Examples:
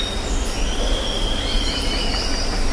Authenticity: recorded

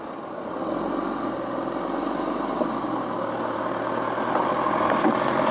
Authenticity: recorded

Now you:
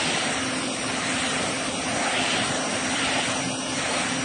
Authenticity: recorded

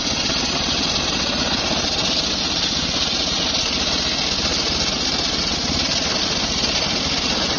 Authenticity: recorded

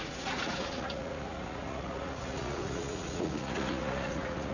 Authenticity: remade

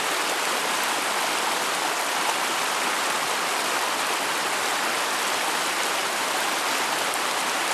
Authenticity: recorded